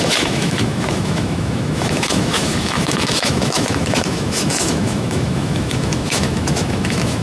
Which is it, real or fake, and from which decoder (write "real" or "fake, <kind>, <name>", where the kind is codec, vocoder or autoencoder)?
fake, autoencoder, DAC-VAE